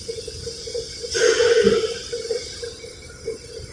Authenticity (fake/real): real